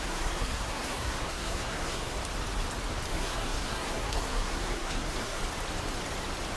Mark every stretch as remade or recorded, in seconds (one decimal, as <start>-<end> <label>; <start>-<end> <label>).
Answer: 0.0-2.2 remade; 2.2-3.1 recorded; 3.1-5.4 remade; 5.4-6.6 recorded